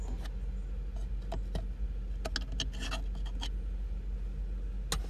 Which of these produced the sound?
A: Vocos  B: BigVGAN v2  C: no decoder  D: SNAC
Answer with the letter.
C